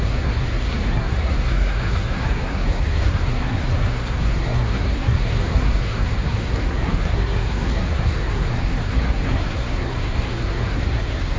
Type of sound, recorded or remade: remade